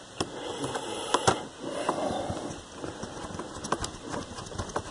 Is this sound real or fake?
real